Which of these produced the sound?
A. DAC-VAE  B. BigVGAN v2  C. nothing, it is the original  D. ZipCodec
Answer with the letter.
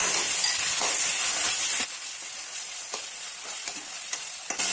C